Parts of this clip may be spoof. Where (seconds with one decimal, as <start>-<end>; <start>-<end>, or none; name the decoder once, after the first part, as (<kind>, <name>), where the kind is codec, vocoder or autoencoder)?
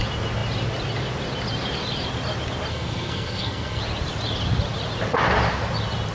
2.7-3.8 (codec, SNAC)